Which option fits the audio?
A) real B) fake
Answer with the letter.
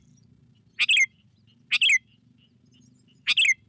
A